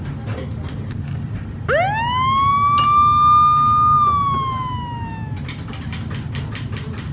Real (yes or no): yes